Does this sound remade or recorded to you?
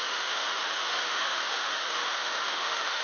remade